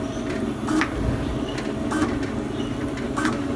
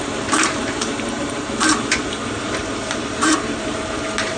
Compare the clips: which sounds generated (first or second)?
second